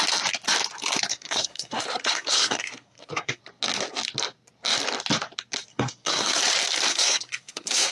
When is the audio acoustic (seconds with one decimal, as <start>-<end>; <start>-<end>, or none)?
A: 0.0-1.1; 3.4-5.7; 6.4-6.9